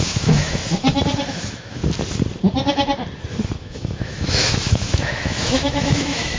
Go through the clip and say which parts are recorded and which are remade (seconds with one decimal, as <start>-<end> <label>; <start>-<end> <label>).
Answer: 0.0-0.6 remade; 0.6-1.3 recorded; 1.3-1.8 remade; 1.8-3.6 recorded; 3.6-6.4 remade